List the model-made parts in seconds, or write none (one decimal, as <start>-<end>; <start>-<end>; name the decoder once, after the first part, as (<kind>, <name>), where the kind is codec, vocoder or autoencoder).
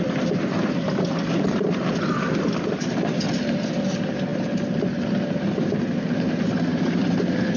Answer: 0.0-4.3 (vocoder, BigVGAN v2); 6.7-7.6